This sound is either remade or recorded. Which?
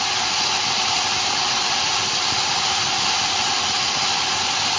recorded